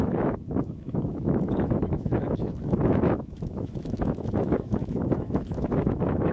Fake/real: fake